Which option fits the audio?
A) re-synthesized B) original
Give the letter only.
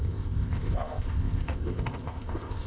A